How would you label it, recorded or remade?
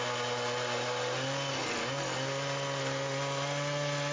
recorded